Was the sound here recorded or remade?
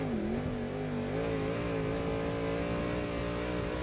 recorded